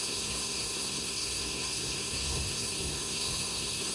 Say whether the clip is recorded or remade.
remade